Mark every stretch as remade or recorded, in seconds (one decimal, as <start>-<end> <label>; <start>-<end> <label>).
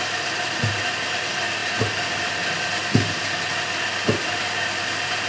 0.0-5.3 recorded